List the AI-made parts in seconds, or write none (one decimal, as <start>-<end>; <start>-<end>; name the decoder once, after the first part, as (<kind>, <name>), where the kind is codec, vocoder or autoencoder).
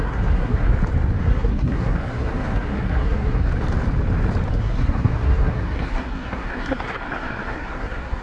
0.0-0.7 (codec, SNAC); 1.2-3.5; 4.5-8.2